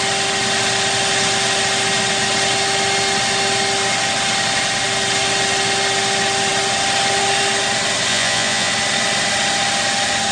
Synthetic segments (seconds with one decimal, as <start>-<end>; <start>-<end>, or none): 8.1-8.7